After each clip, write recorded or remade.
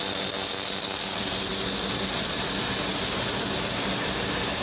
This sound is recorded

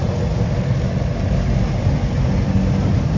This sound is recorded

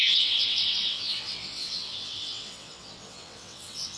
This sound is remade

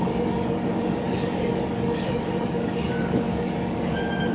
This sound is remade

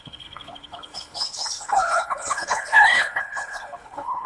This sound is remade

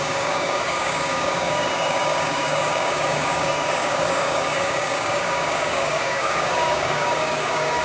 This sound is remade